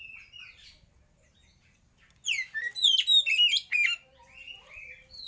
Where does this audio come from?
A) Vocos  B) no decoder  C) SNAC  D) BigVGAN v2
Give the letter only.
B